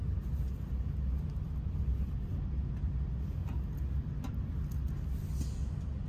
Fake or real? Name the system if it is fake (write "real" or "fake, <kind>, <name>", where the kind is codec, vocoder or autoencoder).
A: real